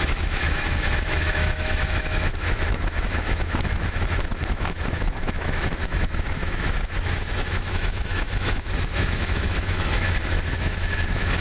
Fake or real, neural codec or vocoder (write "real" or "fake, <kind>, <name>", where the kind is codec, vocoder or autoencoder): fake, autoencoder, DAC-VAE